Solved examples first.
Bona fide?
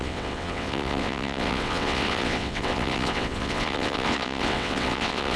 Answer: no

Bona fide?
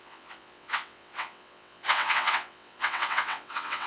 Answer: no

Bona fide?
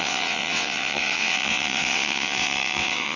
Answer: no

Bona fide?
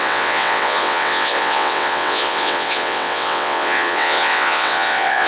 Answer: no